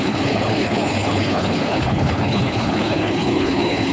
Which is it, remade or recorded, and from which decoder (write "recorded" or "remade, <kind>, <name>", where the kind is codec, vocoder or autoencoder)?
remade, codec, HILCodec